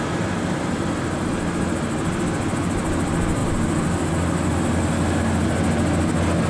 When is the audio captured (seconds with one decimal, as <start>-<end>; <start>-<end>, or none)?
0.0-6.5